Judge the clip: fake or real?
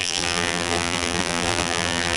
fake